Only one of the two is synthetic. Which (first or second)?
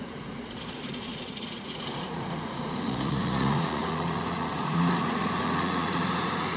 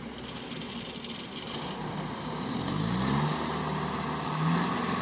first